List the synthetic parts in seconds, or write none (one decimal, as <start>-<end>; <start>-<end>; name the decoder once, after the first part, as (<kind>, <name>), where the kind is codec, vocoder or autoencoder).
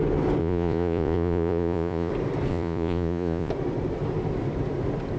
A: 0.4-2.1 (vocoder, Vocos); 2.5-3.5